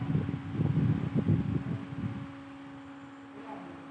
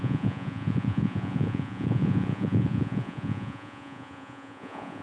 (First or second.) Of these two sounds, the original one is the first